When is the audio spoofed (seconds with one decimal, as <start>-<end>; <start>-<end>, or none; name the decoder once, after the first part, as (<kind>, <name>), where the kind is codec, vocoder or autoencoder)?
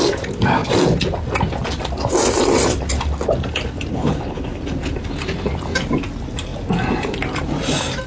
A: 3.9-4.6 (codec, HILCodec)